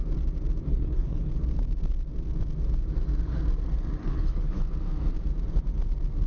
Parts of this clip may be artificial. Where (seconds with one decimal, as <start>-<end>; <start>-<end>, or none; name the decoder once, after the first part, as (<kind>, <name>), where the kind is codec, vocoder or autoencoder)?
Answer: 0.7-1.3 (codec, HILCodec); 4.0-4.6